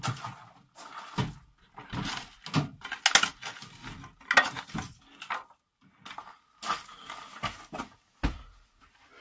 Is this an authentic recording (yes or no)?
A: yes